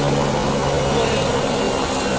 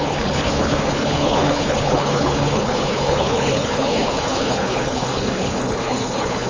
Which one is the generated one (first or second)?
second